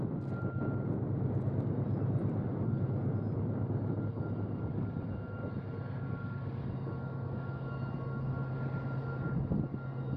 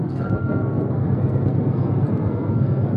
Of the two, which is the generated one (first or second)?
second